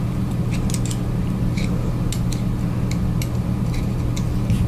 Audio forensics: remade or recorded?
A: recorded